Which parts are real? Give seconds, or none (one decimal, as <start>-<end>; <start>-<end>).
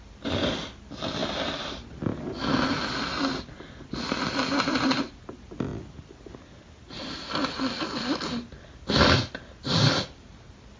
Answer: 0.0-10.8